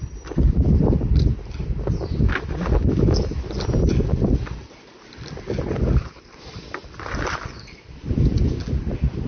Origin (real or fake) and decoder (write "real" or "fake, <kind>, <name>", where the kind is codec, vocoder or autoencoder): real